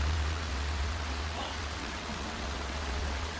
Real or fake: fake